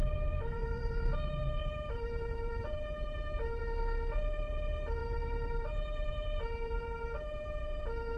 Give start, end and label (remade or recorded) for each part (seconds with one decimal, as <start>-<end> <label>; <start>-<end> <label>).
0.0-0.9 remade; 0.9-1.6 recorded; 1.6-3.6 remade; 3.6-5.0 recorded; 5.0-7.6 remade; 7.6-8.2 recorded